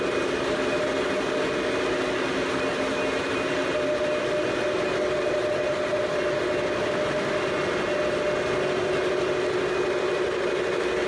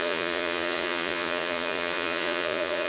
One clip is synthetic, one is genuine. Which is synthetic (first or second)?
second